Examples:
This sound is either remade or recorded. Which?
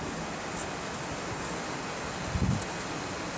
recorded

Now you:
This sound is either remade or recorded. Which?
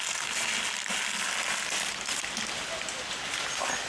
recorded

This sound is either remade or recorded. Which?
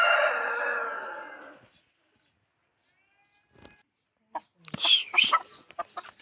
recorded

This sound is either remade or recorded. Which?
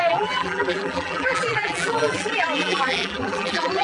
remade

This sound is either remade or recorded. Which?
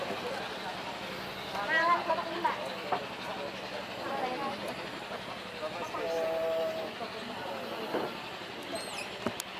recorded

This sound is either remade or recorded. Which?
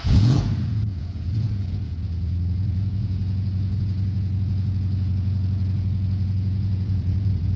remade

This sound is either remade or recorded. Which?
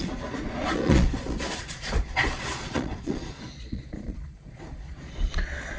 remade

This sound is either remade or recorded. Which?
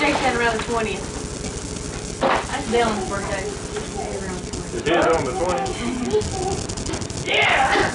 recorded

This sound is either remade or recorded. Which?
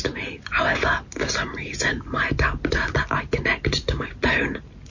recorded